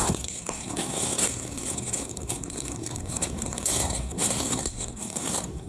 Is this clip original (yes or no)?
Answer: no